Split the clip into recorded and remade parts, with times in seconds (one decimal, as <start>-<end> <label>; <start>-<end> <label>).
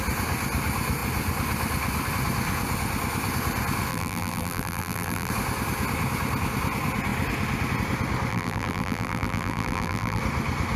0.0-3.9 recorded; 3.9-5.3 remade; 5.3-8.3 recorded; 8.3-10.2 remade; 10.2-10.8 recorded